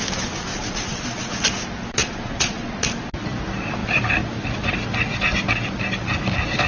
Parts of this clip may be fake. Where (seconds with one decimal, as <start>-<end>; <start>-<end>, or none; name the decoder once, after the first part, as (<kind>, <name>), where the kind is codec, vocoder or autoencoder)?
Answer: 0.5-1.4 (vocoder, Vocos); 2.0-2.8